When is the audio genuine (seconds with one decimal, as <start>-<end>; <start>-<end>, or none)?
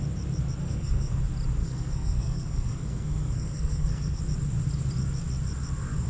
0.0-0.6; 1.2-1.6; 4.2-6.1